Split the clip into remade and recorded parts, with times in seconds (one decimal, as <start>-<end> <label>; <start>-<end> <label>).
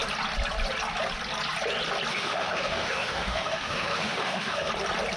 0.0-2.1 recorded; 2.1-4.7 remade; 4.7-5.2 recorded